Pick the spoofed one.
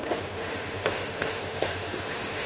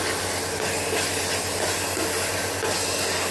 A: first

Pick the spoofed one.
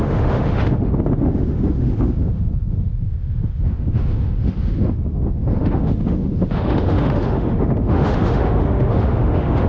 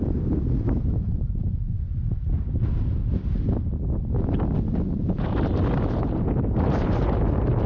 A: first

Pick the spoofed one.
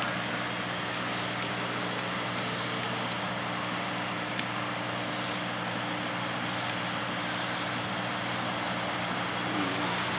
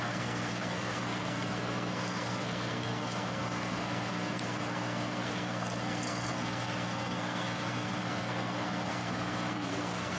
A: second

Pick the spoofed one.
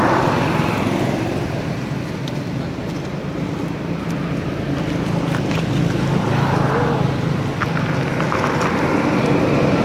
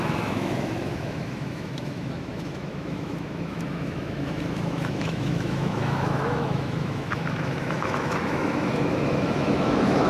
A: second